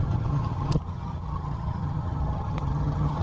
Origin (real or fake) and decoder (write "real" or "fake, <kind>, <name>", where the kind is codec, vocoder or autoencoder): fake, vocoder, HiFi-GAN